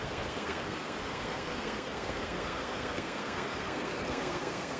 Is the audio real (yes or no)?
no